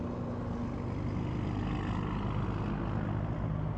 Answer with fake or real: real